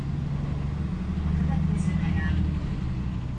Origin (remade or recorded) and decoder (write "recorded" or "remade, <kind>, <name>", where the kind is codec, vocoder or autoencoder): recorded